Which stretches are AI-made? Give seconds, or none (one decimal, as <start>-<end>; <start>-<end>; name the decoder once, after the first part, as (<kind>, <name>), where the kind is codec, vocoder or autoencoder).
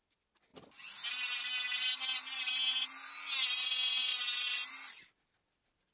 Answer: none